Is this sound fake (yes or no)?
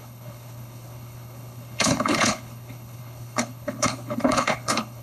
yes